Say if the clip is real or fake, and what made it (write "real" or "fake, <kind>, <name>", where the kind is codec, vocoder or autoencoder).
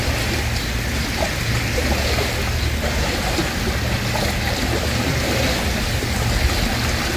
real